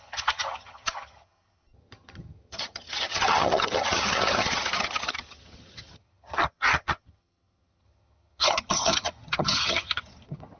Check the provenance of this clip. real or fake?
fake